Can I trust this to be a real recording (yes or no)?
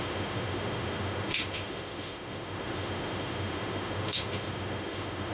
no